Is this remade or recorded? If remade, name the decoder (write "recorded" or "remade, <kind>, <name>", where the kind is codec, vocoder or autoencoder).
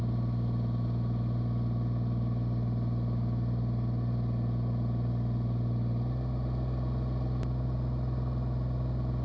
recorded